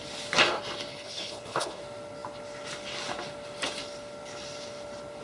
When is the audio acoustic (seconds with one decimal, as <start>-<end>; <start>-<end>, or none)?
0.0-0.9; 1.8-5.2